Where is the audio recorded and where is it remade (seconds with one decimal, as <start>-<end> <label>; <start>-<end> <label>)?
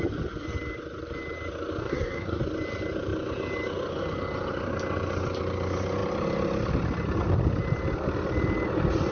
0.0-1.8 recorded; 1.8-2.4 remade; 2.4-9.1 recorded